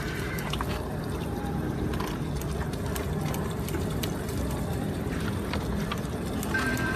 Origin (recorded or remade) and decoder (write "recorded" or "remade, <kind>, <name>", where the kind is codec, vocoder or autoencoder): remade, vocoder, BigVGAN v2